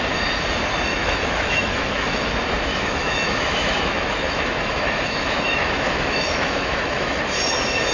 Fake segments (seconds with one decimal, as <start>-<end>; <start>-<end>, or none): 0.9-2.3; 2.7-7.2

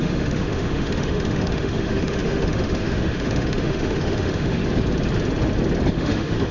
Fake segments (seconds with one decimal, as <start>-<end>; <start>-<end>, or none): 0.0-4.6; 5.9-6.5

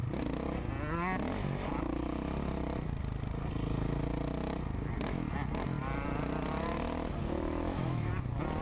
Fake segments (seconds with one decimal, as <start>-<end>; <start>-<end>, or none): 7.2-8.1

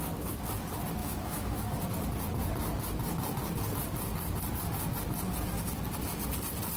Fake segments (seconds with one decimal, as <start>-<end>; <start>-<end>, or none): 1.0-1.8

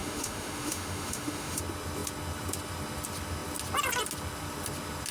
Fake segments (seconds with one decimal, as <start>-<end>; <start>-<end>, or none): 0.0-1.6

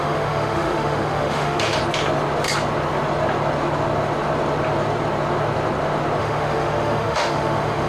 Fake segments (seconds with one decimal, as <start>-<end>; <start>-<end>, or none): 0.0-1.8; 6.2-7.9